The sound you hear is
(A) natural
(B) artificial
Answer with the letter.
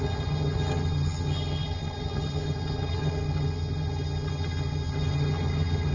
B